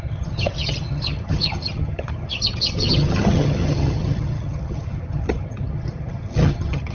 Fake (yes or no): yes